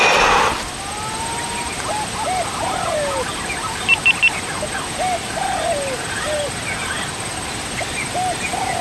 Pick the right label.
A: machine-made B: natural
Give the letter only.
B